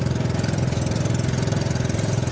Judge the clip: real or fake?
real